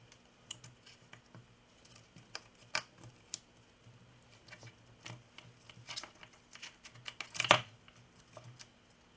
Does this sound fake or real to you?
real